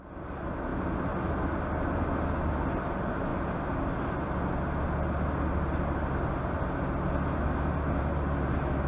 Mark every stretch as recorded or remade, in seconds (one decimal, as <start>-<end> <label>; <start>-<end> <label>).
0.0-8.9 recorded